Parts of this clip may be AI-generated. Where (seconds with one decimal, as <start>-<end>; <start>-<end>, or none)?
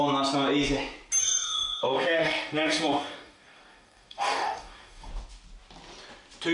1.2-5.1